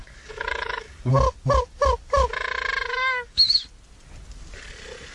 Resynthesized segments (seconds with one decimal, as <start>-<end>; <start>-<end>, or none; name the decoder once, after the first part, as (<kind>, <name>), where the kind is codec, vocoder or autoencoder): 0.0-1.1 (codec, DAC); 2.9-3.6